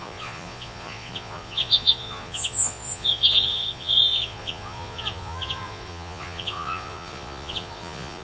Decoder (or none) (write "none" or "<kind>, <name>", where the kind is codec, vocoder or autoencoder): vocoder, Vocos